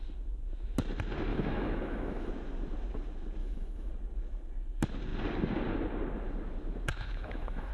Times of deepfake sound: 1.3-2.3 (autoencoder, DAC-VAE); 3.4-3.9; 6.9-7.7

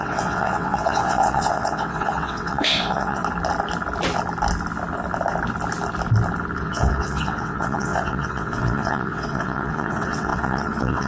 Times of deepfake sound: 0.0-3.2 (vocoder, WaveNeXt); 6.6-11.1

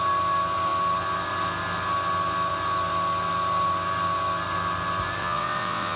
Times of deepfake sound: 5.2-6.0 (vocoder, WaveNeXt)

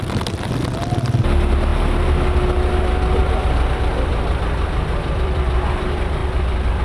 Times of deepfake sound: 3.2-5.4 (vocoder, BigVGAN v2)

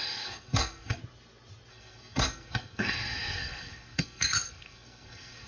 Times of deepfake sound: 0.0-1.0 (codec, SNAC); 1.7-5.5